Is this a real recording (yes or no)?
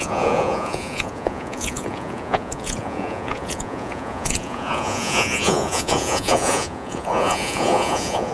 no